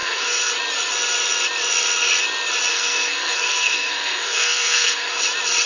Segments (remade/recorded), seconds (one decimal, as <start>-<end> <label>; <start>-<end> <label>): 0.0-0.5 remade; 0.5-2.7 recorded; 2.7-5.2 remade; 5.2-5.7 recorded